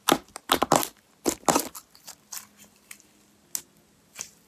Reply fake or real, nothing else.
real